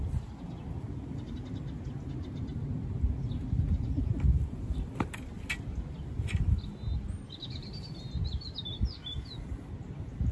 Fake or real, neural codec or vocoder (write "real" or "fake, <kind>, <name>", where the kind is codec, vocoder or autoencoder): real